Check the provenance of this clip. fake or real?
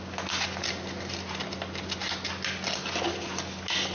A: real